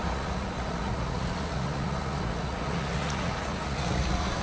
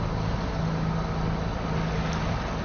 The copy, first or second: first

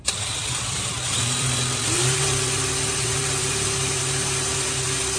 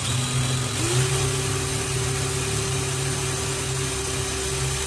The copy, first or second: first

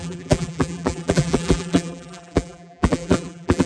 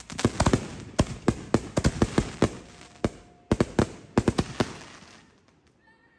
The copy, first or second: first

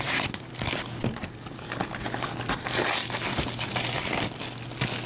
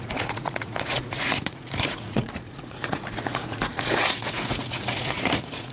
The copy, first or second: second